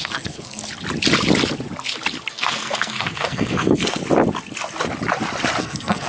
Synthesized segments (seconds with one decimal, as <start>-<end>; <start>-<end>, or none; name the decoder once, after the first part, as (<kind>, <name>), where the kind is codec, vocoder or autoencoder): 0.0-0.6 (codec, SNAC); 2.3-4.0; 5.6-6.1